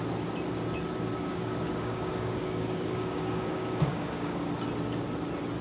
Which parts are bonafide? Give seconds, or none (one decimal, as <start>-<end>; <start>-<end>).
0.0-1.3; 4.5-5.6